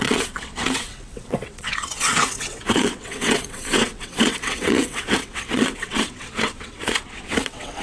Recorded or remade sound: remade